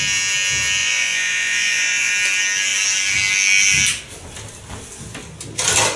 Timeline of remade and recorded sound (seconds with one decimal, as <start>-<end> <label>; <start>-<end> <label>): 0.0-0.8 recorded; 0.8-2.1 remade; 2.1-6.0 recorded